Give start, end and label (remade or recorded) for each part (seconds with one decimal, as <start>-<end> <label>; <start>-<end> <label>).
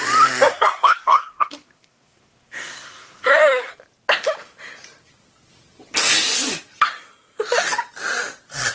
0.0-0.5 recorded; 0.5-3.7 remade; 3.7-8.7 recorded